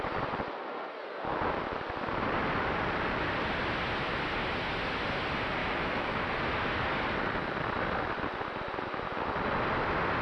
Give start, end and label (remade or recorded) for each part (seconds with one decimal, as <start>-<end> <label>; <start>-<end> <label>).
0.0-5.6 recorded; 5.6-6.3 remade; 6.3-10.2 recorded